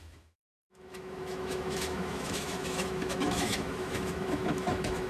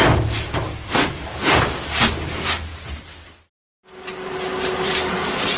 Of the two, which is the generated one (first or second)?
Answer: first